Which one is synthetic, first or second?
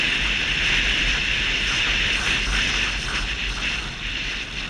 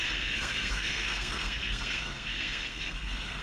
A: second